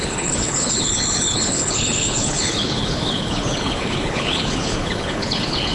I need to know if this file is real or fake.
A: fake